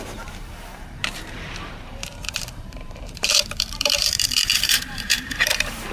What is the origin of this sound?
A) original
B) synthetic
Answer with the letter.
B